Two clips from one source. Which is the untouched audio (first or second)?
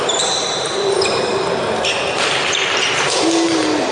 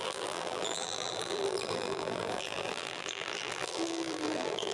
first